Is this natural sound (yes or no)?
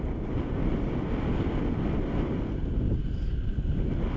yes